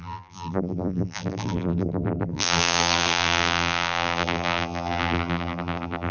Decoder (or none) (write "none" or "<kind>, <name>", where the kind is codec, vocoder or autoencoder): vocoder, BigVGAN v2